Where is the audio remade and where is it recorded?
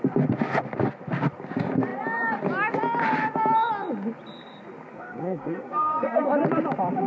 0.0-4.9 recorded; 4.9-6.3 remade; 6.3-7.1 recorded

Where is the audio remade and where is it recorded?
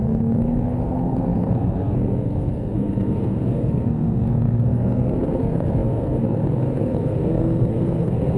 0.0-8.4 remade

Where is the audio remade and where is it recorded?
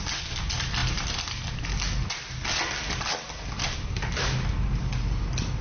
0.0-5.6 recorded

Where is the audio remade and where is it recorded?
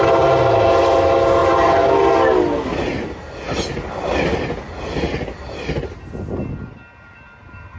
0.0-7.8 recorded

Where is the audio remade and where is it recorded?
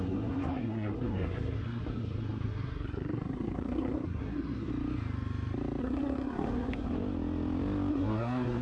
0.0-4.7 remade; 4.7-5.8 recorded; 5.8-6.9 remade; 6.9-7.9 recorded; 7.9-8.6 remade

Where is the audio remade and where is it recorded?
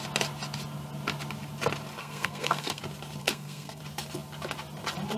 0.0-2.0 recorded; 2.0-2.8 remade; 2.8-3.2 recorded; 3.2-3.8 remade; 3.8-5.2 recorded